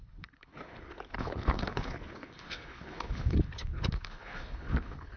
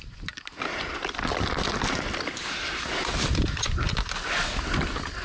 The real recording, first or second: second